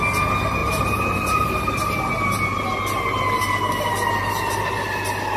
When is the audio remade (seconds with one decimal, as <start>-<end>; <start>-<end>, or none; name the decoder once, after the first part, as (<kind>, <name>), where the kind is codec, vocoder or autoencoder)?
0.6-1.5 (vocoder, BigVGAN v2)

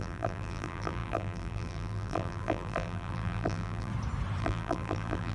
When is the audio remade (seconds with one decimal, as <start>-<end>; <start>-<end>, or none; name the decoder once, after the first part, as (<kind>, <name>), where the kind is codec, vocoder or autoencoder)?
0.0-3.9 (vocoder, BigVGAN v2); 4.4-5.3

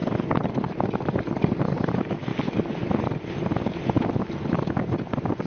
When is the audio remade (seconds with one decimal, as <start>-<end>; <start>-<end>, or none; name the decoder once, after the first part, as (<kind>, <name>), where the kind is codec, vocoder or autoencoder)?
0.6-2.3 (vocoder, BigVGAN v2); 4.5-5.5

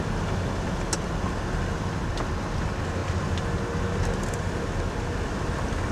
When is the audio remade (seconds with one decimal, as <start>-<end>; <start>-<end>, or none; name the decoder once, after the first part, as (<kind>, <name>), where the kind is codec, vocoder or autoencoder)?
none

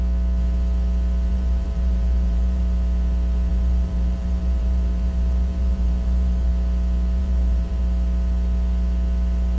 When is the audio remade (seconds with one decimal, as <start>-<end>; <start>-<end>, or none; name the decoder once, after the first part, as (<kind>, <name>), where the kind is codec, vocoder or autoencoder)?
1.3-2.6 (vocoder, BigVGAN v2); 3.5-6.5; 7.2-7.8

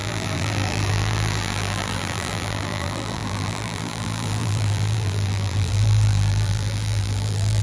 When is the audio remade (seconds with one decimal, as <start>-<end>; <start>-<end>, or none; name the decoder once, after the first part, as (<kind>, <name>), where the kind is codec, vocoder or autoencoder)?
0.0-7.6 (vocoder, BigVGAN v2)